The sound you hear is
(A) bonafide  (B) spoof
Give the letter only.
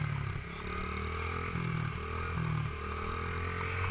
A